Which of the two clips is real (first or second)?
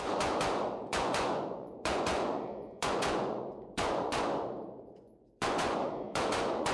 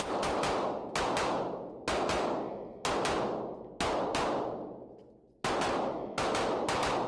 second